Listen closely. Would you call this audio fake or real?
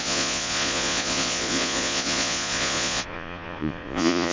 fake